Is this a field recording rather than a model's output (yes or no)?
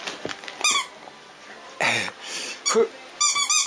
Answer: yes